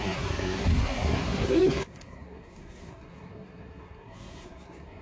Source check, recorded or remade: remade